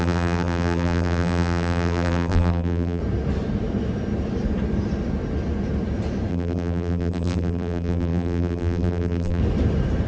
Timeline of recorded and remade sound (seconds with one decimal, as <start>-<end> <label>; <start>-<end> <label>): 0.0-3.0 remade; 3.0-6.3 recorded; 6.3-9.4 remade; 9.4-10.1 recorded